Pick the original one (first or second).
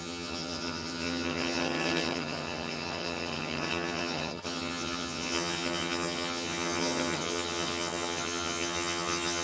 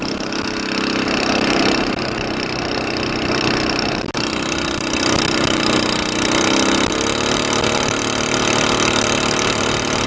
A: second